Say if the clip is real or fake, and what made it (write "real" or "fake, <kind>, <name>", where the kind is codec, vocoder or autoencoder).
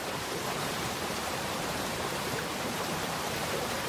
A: fake, vocoder, BigVGAN v2